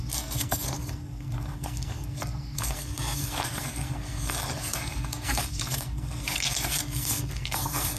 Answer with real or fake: fake